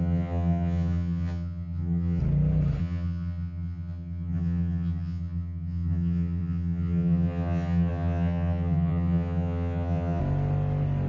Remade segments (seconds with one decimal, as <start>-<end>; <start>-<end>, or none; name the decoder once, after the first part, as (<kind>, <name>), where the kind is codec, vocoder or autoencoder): 0.0-2.2 (vocoder, HiFi-GAN); 2.8-10.2